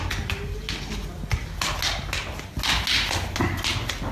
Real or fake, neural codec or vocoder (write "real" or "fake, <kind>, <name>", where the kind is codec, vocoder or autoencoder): real